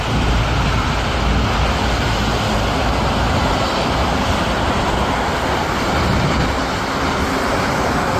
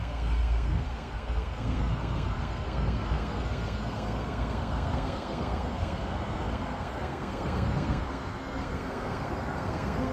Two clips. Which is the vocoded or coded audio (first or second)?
second